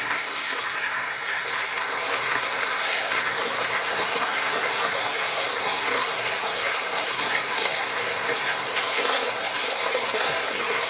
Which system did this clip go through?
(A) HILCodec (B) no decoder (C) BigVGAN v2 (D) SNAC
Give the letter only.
D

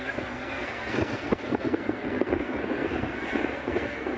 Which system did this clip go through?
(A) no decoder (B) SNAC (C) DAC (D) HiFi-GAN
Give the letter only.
B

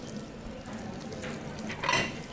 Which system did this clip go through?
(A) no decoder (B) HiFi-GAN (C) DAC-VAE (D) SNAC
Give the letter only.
A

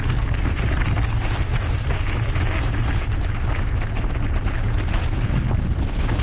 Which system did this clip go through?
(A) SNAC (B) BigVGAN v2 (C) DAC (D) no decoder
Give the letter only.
D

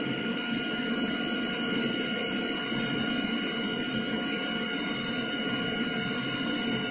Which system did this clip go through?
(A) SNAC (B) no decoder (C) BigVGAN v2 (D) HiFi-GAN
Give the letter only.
B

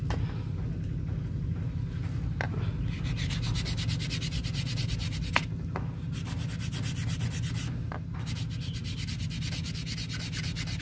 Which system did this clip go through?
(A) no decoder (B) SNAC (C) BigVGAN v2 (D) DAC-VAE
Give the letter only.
A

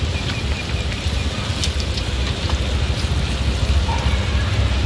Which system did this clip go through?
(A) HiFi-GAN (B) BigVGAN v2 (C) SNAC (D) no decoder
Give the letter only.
D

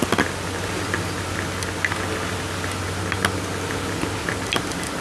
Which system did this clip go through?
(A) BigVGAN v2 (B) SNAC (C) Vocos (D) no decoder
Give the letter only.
D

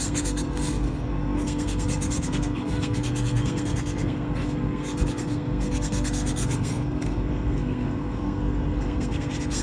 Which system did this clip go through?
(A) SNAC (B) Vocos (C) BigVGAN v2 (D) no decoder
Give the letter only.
A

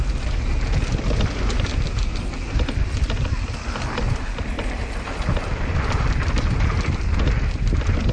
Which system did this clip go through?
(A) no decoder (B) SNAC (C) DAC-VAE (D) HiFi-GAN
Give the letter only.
A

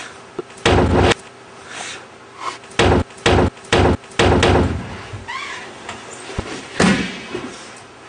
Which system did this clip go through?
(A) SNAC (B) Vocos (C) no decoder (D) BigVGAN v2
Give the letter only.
C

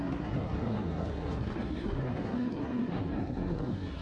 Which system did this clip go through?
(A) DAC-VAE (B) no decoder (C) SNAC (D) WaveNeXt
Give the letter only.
C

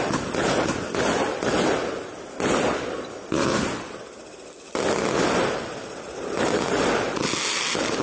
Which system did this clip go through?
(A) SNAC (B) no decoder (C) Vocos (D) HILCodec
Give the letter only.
B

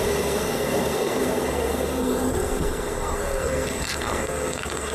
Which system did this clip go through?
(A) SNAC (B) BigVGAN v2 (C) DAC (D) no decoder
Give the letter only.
A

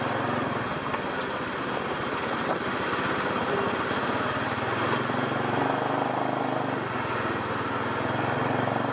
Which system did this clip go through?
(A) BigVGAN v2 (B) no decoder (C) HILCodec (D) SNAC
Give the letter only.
B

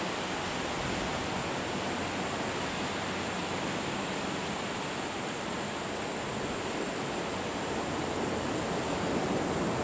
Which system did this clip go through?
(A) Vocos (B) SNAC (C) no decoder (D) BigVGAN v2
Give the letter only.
C